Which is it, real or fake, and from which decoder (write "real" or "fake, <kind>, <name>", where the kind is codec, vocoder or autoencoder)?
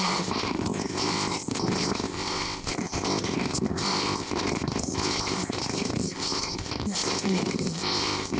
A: fake, codec, ZipCodec